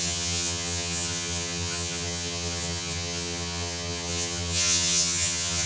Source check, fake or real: fake